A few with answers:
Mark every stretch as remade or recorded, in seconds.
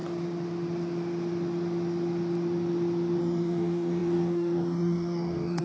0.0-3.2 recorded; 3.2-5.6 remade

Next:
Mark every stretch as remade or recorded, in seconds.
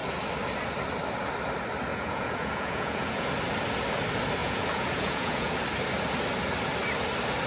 0.0-1.9 recorded; 1.9-3.3 remade; 3.3-4.4 recorded; 4.4-5.5 remade; 5.5-7.5 recorded